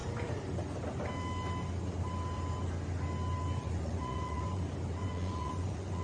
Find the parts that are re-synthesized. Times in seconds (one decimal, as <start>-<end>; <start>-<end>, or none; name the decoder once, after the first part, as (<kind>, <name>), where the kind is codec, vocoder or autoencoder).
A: 3.6-4.6 (vocoder, Vocos); 5.0-6.0